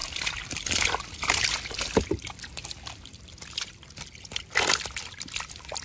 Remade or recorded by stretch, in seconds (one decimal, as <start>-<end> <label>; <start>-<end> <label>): 0.0-3.5 remade; 3.5-5.8 recorded